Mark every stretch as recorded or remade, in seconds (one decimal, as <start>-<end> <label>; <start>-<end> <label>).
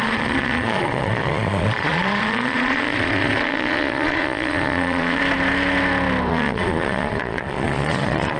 0.0-5.2 remade; 5.2-6.3 recorded; 6.3-8.4 remade